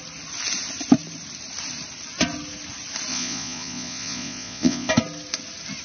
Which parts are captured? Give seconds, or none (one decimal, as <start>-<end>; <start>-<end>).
0.0-3.1; 4.9-5.8